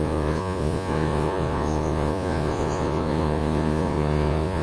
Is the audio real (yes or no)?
no